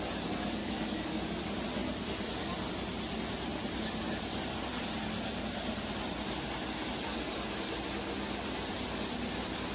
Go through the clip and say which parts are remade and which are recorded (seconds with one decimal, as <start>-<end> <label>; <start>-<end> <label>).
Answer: 0.0-0.6 recorded; 0.6-1.4 remade; 1.4-9.7 recorded

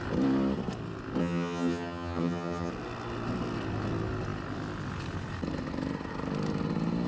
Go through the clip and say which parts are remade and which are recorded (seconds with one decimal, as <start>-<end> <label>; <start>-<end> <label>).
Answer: 0.0-1.2 recorded; 1.2-2.7 remade; 2.7-7.1 recorded

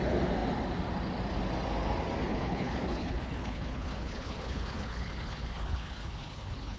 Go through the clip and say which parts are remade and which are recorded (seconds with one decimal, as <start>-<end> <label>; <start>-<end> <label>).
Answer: 0.0-2.3 recorded; 2.3-6.8 remade